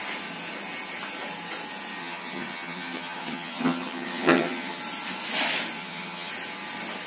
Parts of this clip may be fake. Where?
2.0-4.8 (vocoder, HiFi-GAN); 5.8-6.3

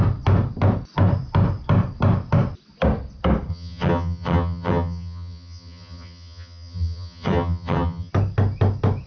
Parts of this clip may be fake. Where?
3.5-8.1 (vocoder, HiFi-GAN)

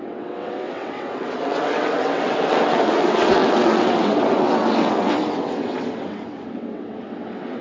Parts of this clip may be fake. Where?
0.0-7.6 (vocoder, WaveNeXt)

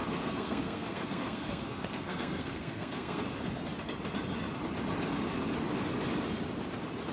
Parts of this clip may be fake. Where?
0.0-3.2 (codec, SNAC)

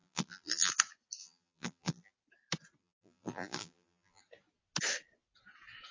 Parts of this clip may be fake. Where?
0.0-0.7 (vocoder, BigVGAN v2); 1.2-2.1; 2.8-4.2

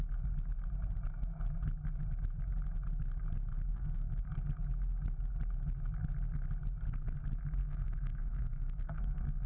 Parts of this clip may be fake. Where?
3.7-4.2 (codec, SNAC); 7.6-9.5

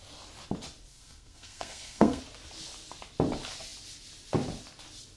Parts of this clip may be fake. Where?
0.9-2.2 (codec, SNAC)